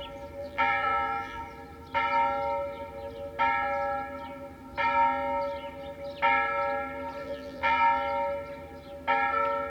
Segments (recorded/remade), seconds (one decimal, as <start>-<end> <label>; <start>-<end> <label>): 0.0-0.4 recorded; 0.4-1.4 remade; 1.4-7.2 recorded; 7.2-7.8 remade; 7.8-9.7 recorded